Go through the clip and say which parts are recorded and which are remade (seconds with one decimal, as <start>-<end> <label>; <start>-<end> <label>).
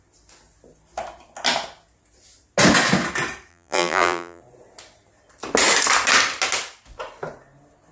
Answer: 0.0-3.5 recorded; 3.5-4.4 remade; 4.4-7.9 recorded